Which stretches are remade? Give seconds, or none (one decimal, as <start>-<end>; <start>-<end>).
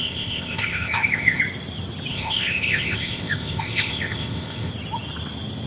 0.0-1.4; 2.1-4.7